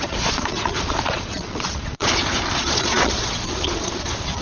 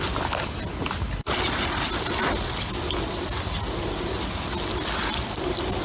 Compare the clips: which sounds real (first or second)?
second